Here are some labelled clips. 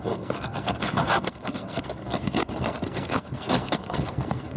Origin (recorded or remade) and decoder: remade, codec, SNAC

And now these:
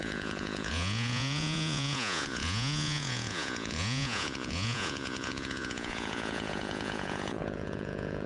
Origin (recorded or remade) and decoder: remade, vocoder, Vocos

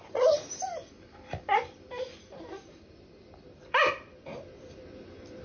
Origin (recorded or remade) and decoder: remade, vocoder, BigVGAN v2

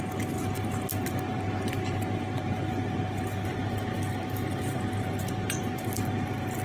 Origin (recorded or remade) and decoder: recorded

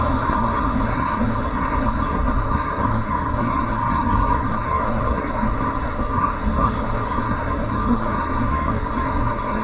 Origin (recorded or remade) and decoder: remade, codec, SNAC